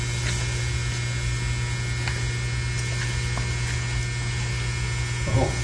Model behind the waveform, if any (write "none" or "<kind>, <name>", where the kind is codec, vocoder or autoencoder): none